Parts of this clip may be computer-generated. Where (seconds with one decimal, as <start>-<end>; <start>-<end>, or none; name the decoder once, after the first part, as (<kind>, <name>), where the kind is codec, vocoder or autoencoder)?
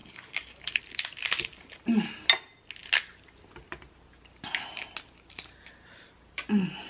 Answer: 0.0-0.8 (codec, DAC)